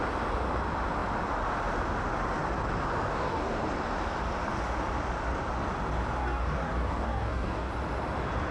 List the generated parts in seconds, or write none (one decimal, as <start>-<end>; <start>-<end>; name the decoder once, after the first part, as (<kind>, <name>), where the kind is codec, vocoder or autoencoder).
3.1-3.6 (codec, DAC); 6.2-7.7